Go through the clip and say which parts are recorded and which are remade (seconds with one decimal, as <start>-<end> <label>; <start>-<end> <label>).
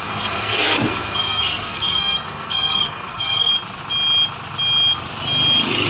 0.0-3.5 remade; 3.5-5.9 recorded